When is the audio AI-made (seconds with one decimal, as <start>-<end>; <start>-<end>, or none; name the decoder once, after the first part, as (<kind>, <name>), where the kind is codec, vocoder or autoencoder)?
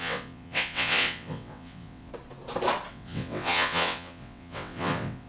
0.0-2.1 (vocoder, WaveNeXt); 2.9-5.3